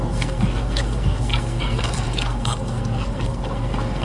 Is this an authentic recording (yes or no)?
no